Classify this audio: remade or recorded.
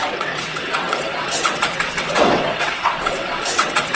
remade